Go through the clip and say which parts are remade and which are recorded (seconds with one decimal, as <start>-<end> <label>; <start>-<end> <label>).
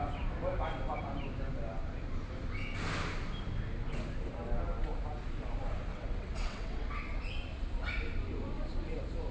0.0-5.9 recorded; 5.9-7.0 remade; 7.0-9.3 recorded